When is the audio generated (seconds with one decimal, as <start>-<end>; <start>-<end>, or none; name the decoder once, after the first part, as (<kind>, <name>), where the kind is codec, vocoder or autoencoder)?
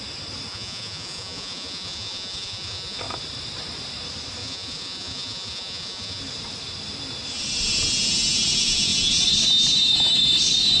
0.5-3.0 (vocoder, Vocos); 4.4-6.2